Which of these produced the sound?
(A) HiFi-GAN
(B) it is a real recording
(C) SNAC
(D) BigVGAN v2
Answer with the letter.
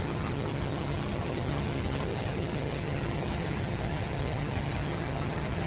A